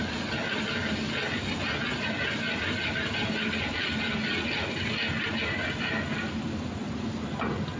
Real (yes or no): yes